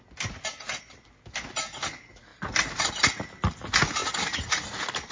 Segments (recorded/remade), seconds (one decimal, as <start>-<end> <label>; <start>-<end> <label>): 0.0-5.1 recorded